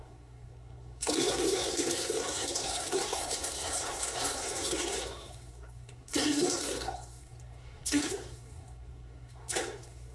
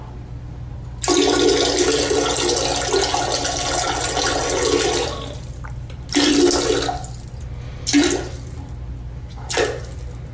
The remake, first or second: first